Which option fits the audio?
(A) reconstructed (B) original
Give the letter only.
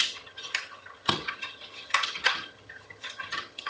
A